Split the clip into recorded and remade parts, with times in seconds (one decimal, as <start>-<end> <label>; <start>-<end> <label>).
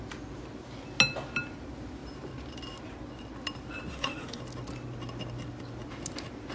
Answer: 0.0-3.9 recorded; 3.9-4.4 remade; 4.4-6.5 recorded